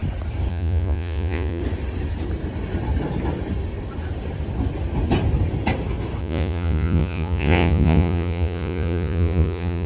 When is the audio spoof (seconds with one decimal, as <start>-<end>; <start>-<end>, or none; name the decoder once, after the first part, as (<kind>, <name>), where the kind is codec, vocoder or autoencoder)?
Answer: 0.5-1.6 (vocoder, Vocos); 6.2-9.9